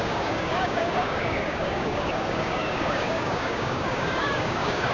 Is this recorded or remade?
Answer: remade